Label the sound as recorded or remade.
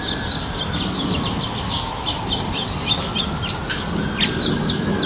recorded